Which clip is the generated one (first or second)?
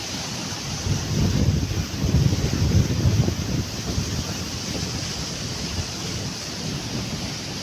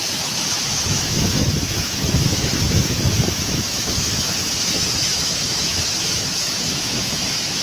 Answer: second